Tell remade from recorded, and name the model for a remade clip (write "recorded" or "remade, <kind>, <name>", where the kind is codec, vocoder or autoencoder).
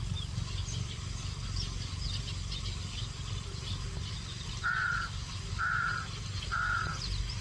recorded